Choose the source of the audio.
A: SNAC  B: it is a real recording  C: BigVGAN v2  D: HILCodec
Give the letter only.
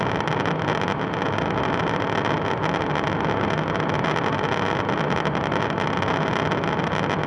B